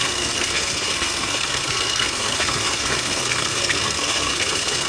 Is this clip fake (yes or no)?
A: yes